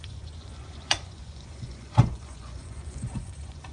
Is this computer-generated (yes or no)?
yes